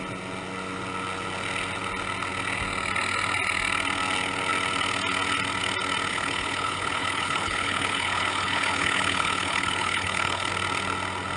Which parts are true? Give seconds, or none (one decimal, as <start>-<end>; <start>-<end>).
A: 0.0-6.1; 10.5-11.4